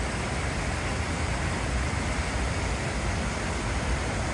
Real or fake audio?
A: real